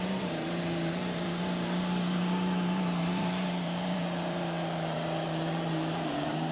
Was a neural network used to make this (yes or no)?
yes